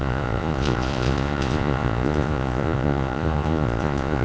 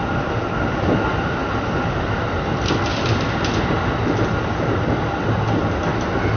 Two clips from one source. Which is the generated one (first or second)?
first